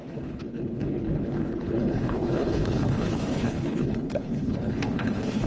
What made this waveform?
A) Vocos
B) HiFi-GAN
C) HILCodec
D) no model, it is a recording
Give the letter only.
C